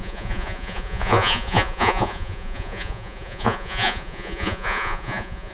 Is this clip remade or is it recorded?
remade